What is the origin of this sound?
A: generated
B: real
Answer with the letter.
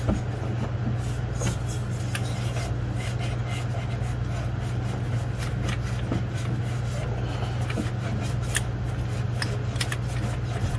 B